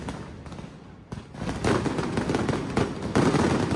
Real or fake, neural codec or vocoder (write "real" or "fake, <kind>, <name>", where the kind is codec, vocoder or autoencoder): real